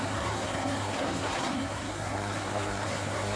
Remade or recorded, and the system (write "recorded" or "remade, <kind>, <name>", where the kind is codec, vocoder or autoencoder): remade, codec, SNAC